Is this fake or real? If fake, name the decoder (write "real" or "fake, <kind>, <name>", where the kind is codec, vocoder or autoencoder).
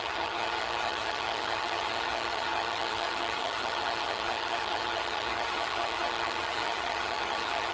fake, vocoder, HiFi-GAN